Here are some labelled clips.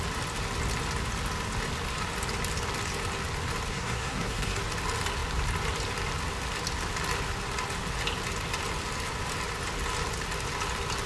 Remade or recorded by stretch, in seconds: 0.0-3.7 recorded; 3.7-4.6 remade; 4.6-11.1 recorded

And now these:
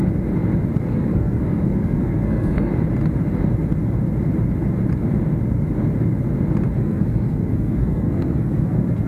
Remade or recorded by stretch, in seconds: 0.0-0.8 recorded; 0.8-2.7 remade; 2.7-6.8 recorded; 6.8-9.1 remade

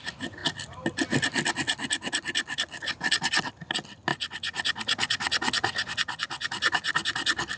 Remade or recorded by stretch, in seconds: 0.0-7.6 recorded

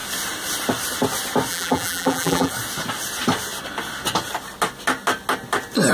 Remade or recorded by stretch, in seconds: 0.0-1.5 recorded; 1.5-2.5 remade; 2.5-5.9 recorded

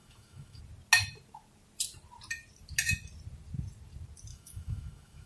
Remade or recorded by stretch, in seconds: 0.0-0.6 remade; 0.6-4.3 recorded; 4.3-5.3 remade